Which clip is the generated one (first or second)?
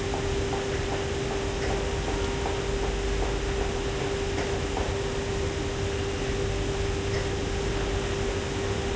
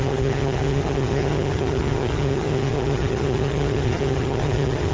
second